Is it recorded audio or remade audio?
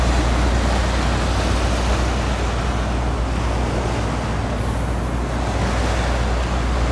recorded